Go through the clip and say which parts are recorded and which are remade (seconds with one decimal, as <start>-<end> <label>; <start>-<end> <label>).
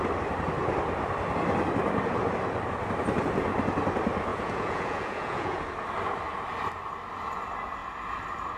0.0-4.3 recorded; 4.3-5.6 remade; 5.6-8.6 recorded